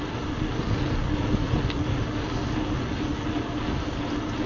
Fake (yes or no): no